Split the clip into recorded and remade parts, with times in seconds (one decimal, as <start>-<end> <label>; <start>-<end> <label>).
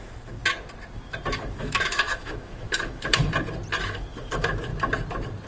0.0-0.4 remade; 0.4-1.3 recorded; 1.3-3.2 remade; 3.2-3.8 recorded; 3.8-4.7 remade; 4.7-5.5 recorded